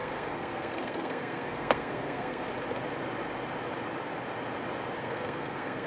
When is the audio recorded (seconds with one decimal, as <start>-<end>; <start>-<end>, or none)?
2.5-5.0